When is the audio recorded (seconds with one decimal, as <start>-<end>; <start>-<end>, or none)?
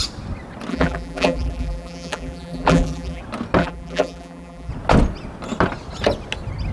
0.0-0.7; 3.2-3.6; 4.7-6.7